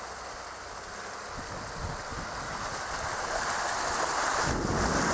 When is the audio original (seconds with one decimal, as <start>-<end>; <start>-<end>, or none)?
0.0-5.1